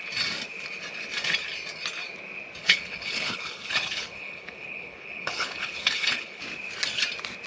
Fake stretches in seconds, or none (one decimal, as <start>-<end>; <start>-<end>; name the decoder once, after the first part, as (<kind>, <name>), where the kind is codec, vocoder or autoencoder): 2.6-6.4 (codec, HILCodec)